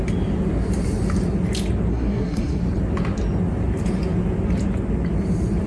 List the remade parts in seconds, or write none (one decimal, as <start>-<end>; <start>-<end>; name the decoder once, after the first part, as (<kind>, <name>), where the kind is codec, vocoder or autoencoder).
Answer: 1.9-2.6 (codec, SNAC)